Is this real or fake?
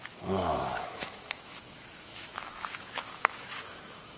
fake